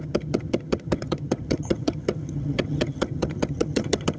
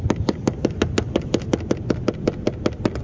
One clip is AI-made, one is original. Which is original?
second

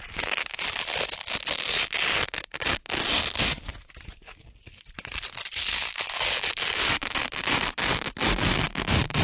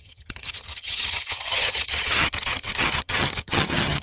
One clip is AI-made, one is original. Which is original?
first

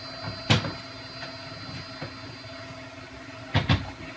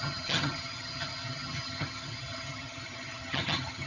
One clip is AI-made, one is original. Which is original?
first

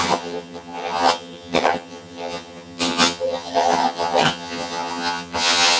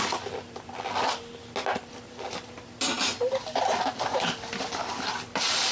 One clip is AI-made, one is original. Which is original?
second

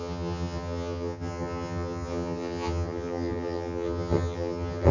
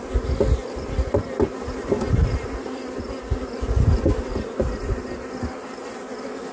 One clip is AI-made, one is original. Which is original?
second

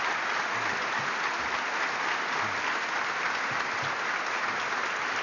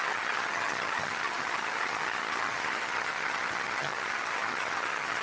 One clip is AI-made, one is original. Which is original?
first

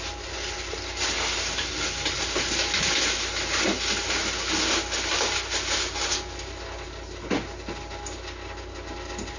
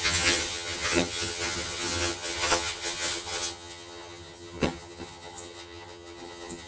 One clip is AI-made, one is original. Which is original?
first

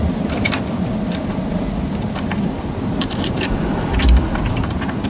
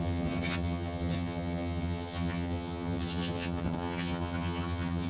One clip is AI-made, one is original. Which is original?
first